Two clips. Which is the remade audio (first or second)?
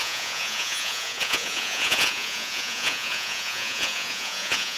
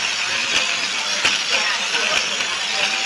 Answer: first